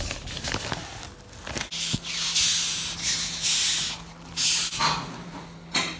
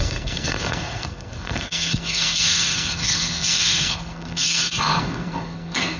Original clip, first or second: first